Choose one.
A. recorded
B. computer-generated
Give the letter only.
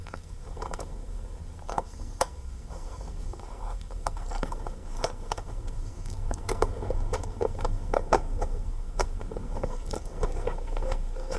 B